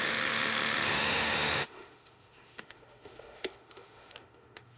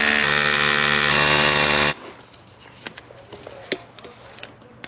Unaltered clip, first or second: second